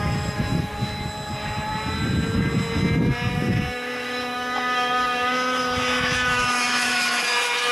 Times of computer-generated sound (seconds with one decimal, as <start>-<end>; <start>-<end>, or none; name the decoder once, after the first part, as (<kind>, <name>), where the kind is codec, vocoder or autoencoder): 0.0-0.7 (autoencoder, DAC-VAE); 3.3-7.7